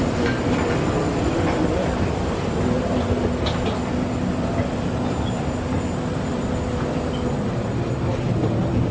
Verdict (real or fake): real